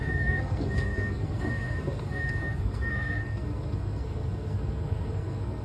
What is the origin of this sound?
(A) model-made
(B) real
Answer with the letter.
A